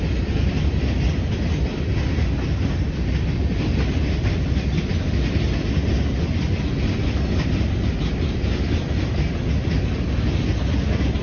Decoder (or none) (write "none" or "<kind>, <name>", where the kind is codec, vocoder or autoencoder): none